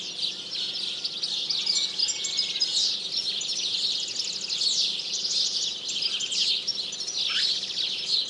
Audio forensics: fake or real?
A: real